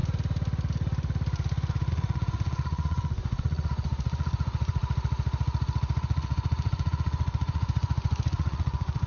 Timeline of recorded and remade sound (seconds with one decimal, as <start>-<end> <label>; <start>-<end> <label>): 0.0-1.9 recorded; 1.9-4.8 remade; 4.8-6.0 recorded; 6.0-9.1 remade